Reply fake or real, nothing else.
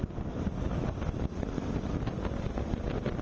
real